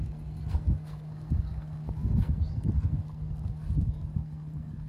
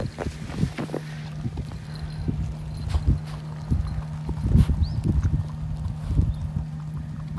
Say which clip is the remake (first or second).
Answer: first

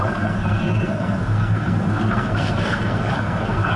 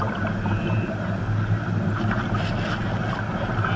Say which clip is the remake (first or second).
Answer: first